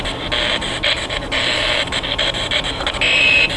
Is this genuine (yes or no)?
yes